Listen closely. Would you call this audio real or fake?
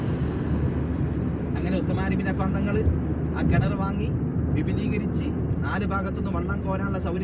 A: real